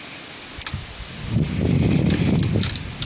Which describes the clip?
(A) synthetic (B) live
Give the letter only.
B